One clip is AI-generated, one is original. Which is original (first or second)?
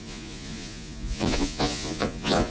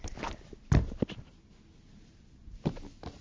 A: second